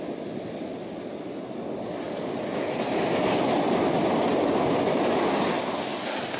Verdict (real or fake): real